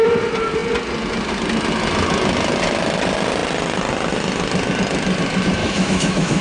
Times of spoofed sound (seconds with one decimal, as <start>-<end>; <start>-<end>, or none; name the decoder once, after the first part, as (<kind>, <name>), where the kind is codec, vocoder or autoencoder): 5.6-6.4 (autoencoder, DAC-VAE)